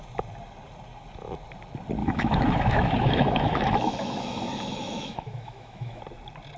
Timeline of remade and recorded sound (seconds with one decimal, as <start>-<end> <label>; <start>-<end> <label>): 0.0-2.0 recorded; 2.0-6.0 remade; 6.0-6.6 recorded